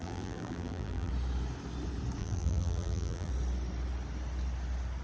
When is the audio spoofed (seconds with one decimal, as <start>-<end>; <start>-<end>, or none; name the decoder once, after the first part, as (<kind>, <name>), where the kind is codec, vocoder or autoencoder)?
0.0-1.1 (vocoder, BigVGAN v2); 2.2-3.3